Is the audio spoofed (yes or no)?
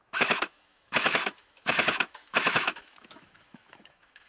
yes